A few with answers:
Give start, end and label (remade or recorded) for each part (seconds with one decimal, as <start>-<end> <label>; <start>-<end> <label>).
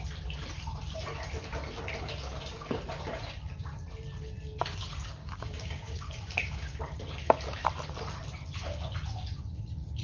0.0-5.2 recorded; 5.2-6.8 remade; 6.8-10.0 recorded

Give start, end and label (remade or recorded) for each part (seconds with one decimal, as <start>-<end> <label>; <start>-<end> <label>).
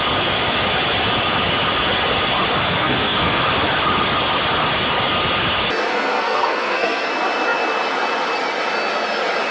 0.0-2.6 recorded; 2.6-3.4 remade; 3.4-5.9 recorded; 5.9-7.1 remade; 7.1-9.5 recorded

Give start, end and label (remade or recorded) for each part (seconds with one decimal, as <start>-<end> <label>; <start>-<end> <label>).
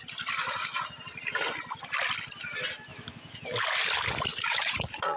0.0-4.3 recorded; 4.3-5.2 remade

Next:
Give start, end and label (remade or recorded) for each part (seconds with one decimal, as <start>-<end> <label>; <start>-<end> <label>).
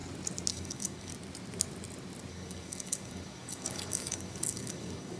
0.0-0.5 recorded; 0.5-1.1 remade; 1.1-2.3 recorded; 2.3-5.2 remade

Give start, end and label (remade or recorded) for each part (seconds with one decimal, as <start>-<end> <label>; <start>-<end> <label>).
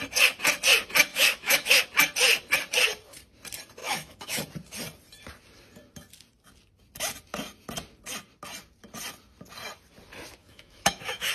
0.0-1.1 recorded; 1.1-1.8 remade; 1.8-3.8 recorded; 3.8-4.4 remade; 4.4-10.4 recorded; 10.4-11.3 remade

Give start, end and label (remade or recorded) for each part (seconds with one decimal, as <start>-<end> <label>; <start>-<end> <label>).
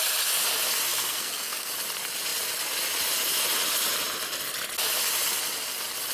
0.0-0.9 recorded; 0.9-1.7 remade; 1.7-6.1 recorded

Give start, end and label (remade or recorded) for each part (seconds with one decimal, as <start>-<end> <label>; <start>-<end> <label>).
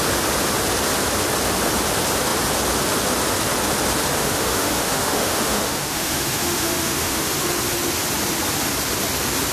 0.0-4.2 recorded; 4.2-7.3 remade; 7.3-9.5 recorded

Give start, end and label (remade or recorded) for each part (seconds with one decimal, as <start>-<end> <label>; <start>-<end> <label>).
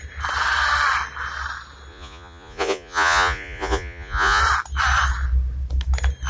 0.0-1.9 recorded; 1.9-4.4 remade; 4.4-6.3 recorded